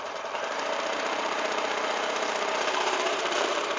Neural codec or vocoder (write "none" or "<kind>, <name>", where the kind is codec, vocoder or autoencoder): vocoder, BigVGAN v2